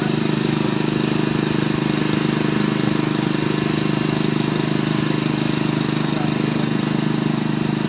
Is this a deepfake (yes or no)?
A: no